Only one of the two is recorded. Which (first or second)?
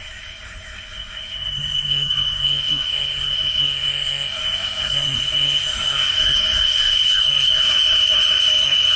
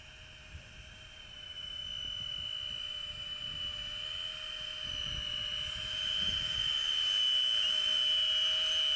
second